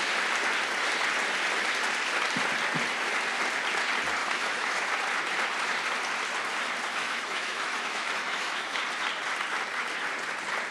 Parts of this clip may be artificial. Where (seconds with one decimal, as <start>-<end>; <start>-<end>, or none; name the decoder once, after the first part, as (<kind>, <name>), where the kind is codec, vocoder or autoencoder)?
4.2-4.8 (autoencoder, DAC-VAE); 6.9-8.8